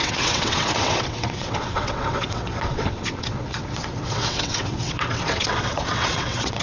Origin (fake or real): fake